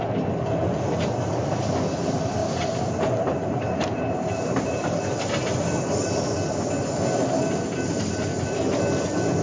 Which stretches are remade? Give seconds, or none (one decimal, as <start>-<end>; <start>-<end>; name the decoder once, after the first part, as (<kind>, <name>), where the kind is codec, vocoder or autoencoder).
2.4-5.0 (vocoder, BigVGAN v2)